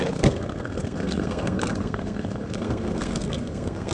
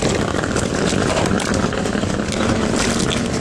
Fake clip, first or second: first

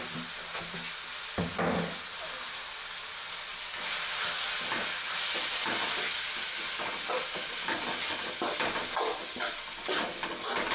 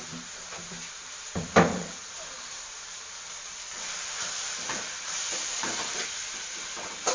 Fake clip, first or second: second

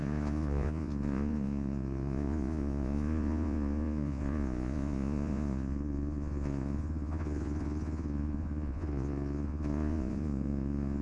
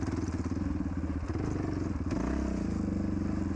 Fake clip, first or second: first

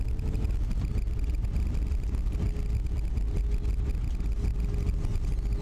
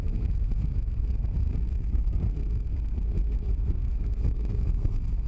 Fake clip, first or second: second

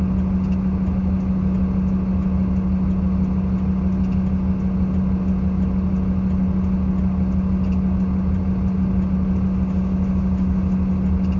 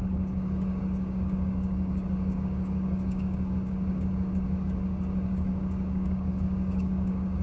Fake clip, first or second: second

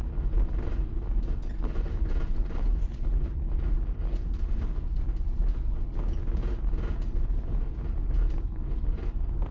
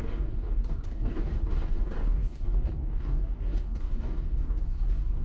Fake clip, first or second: second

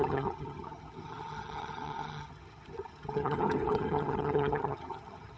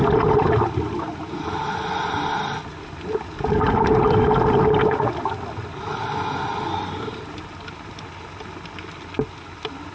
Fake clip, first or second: first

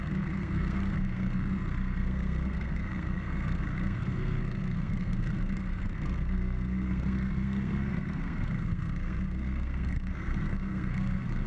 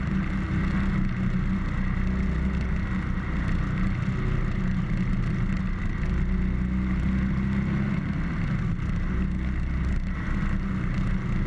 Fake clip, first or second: first